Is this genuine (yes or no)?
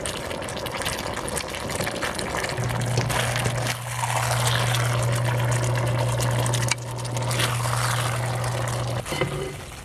yes